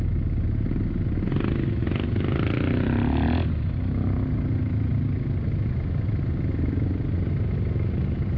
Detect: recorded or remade recorded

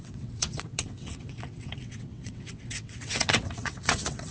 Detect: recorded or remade remade